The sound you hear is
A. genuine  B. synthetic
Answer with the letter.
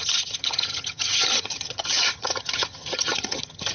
B